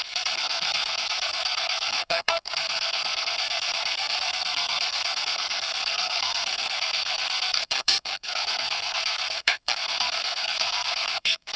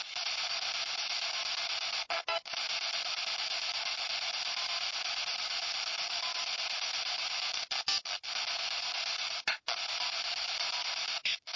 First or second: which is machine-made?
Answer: first